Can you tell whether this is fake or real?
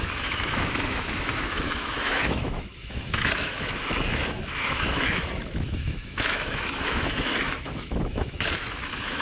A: fake